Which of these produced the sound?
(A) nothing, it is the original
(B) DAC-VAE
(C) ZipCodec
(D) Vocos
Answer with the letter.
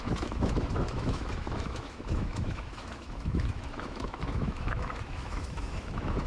B